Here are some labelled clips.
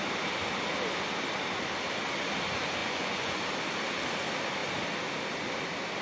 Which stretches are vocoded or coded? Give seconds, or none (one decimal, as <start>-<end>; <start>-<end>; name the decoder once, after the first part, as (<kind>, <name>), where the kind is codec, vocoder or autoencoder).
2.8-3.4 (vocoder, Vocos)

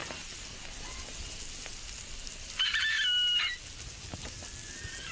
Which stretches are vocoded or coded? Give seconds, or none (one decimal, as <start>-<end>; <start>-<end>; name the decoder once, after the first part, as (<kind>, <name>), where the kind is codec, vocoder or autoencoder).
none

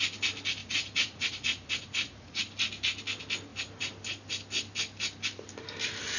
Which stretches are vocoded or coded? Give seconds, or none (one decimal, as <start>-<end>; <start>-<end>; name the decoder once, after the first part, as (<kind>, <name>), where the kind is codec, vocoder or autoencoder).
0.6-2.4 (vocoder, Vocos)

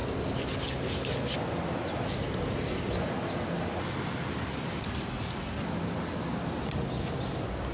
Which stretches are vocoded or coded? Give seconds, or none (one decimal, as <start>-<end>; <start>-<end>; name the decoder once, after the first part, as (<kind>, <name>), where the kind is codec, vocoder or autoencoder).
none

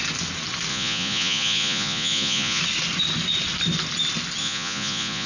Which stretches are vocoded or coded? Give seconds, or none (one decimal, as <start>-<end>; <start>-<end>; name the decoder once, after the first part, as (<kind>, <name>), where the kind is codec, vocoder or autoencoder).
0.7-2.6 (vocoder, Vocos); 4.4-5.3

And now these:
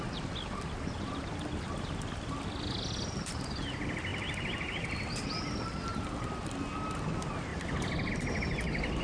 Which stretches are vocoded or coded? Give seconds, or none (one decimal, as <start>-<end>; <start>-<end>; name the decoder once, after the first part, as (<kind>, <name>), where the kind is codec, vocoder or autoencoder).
none

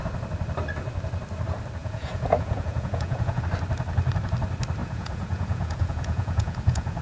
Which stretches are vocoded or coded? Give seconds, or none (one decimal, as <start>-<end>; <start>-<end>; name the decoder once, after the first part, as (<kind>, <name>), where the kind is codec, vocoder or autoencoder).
1.8-3.4 (vocoder, Vocos); 4.8-7.0

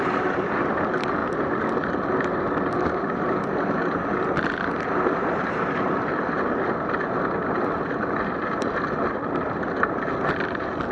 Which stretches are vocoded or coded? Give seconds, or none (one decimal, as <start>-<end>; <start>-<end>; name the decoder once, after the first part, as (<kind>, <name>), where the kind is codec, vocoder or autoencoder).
none